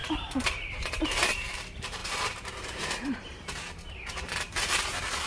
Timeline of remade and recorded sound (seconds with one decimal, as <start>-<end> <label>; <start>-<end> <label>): 0.0-1.0 remade; 1.0-2.0 recorded; 2.0-5.3 remade